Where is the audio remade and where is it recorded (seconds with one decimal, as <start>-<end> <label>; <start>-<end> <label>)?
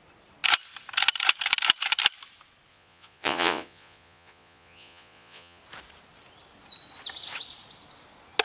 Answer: 0.0-2.7 recorded; 2.7-5.6 remade; 5.6-8.4 recorded